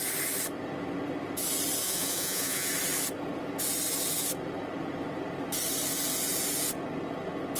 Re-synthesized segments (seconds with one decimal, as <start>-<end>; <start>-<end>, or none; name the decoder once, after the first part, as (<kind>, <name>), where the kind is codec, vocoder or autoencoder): 1.8-2.7 (vocoder, Vocos)